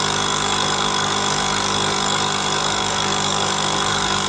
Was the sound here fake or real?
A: fake